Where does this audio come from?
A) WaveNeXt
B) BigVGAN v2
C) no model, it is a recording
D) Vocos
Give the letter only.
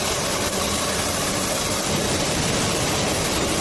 B